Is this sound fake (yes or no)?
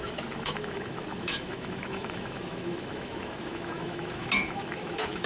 yes